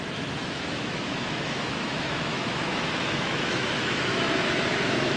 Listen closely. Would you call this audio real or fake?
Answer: fake